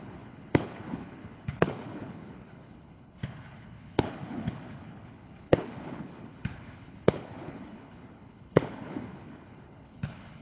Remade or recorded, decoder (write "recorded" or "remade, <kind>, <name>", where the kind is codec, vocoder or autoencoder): remade, codec, HILCodec